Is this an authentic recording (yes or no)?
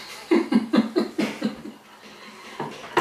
yes